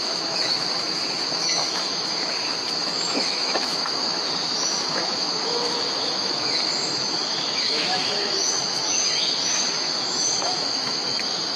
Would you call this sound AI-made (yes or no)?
yes